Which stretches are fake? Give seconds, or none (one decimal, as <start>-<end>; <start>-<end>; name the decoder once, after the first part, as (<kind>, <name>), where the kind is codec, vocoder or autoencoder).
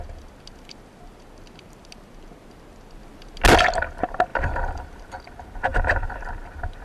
4.3-5.1 (vocoder, BigVGAN v2); 5.7-6.2